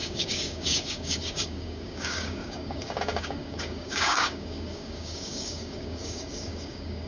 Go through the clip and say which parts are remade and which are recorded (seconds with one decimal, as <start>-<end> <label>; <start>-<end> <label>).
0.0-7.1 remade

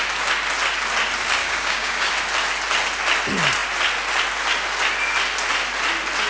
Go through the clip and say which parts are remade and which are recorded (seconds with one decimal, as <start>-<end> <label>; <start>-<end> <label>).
0.0-1.4 recorded; 1.4-2.1 remade; 2.1-6.3 recorded

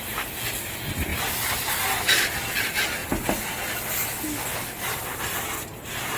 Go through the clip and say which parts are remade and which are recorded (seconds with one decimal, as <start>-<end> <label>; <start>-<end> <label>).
0.0-6.2 recorded

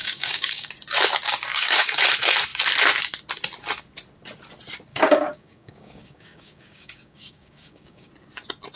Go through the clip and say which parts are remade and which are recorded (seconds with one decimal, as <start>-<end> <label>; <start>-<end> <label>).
0.0-0.7 remade; 0.7-1.5 recorded; 1.5-2.0 remade; 2.0-4.9 recorded; 4.9-8.1 remade; 8.1-8.8 recorded